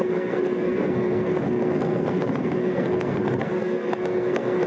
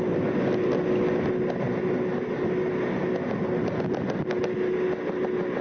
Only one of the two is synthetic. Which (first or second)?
first